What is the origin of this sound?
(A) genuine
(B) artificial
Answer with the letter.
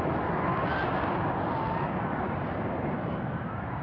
A